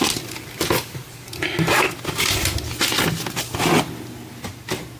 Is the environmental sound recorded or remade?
recorded